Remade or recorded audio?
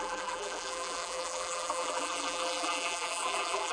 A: remade